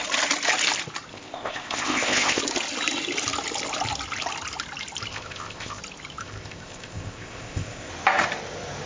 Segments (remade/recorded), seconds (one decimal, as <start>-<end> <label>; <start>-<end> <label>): 0.0-1.1 recorded; 1.1-2.4 remade; 2.4-5.1 recorded; 5.1-5.8 remade; 5.8-6.2 recorded; 6.2-7.9 remade; 7.9-8.9 recorded